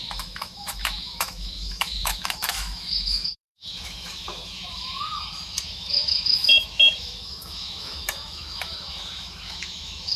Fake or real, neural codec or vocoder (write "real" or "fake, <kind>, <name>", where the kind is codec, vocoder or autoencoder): fake, autoencoder, DAC-VAE